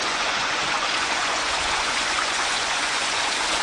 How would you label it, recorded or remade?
remade